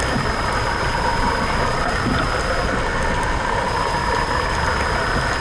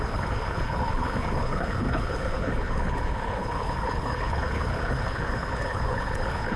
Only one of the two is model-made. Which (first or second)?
second